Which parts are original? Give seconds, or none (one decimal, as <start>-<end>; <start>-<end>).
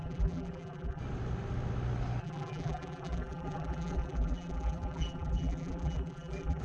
1.0-2.2